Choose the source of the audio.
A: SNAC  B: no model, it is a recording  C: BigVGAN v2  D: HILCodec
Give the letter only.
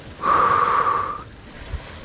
B